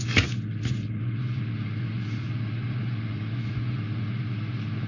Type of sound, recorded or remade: remade